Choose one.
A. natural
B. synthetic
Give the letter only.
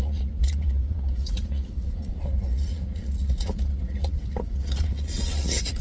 B